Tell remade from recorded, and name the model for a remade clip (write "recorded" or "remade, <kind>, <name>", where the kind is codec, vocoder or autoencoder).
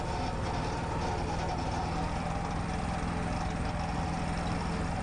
recorded